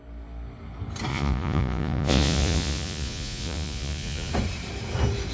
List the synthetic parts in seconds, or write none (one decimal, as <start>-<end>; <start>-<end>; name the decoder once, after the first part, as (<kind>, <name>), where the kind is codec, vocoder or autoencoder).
1.1-4.3 (vocoder, Vocos)